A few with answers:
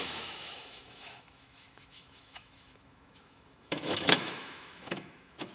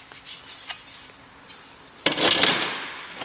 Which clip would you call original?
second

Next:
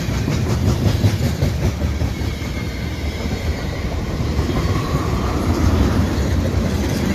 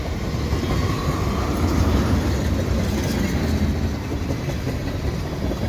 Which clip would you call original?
second